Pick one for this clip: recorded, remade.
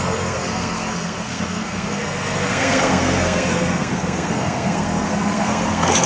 remade